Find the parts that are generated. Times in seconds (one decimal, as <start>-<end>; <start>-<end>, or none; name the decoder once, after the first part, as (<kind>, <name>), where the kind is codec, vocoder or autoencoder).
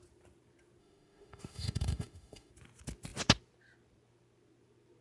0.8-2.5 (autoencoder, DAC-VAE)